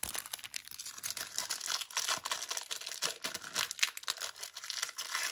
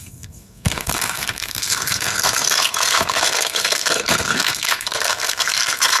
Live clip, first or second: first